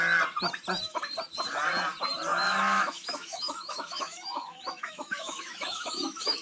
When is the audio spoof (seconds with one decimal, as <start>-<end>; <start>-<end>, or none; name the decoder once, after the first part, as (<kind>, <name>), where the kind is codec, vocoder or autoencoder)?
2.3-6.4 (autoencoder, DAC-VAE)